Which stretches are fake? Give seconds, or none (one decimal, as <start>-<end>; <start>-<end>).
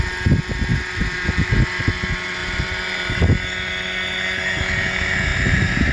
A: 0.7-1.5; 2.4-3.2; 5.3-5.9